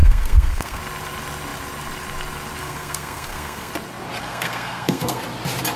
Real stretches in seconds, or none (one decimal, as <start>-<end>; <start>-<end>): 0.8-2.6; 3.7-4.2; 5.2-5.8